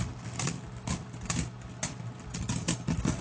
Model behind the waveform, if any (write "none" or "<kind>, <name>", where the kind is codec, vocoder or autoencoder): none